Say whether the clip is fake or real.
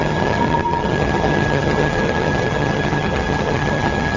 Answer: fake